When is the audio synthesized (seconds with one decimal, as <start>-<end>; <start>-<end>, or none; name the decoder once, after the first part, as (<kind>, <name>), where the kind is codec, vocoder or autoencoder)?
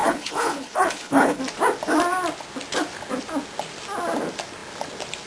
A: 0.0-1.4 (codec, HILCodec)